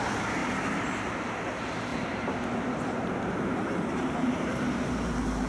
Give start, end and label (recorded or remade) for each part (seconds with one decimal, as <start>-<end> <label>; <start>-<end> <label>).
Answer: 0.0-0.4 recorded; 0.4-1.1 remade; 1.1-1.9 recorded; 1.9-5.5 remade